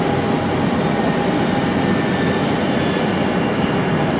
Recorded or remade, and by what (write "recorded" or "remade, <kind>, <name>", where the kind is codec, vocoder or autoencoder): recorded